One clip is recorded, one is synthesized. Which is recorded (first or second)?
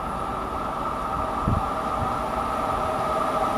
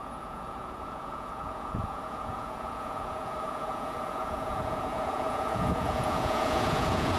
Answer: first